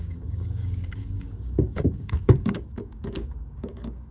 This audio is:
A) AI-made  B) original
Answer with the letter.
A